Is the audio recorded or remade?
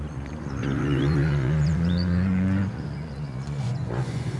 remade